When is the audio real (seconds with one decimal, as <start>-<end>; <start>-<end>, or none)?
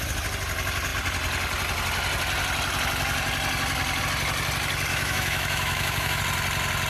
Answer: 0.0-4.9; 6.2-6.9